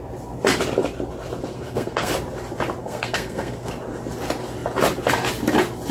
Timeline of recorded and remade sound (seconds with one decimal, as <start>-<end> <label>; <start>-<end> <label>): 0.0-1.5 recorded; 1.5-2.1 remade; 2.1-2.8 recorded; 2.8-3.7 remade; 3.7-5.9 recorded